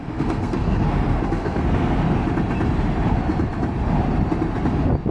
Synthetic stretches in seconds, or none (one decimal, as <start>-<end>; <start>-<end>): 0.0-2.0